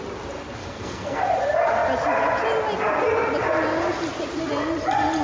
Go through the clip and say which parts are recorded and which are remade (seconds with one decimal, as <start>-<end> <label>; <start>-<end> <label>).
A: 0.0-0.6 recorded; 0.6-1.2 remade; 1.2-5.2 recorded